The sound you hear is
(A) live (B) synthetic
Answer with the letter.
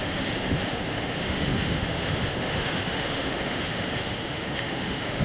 B